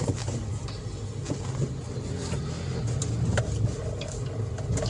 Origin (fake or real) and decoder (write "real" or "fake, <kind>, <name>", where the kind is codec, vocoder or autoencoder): real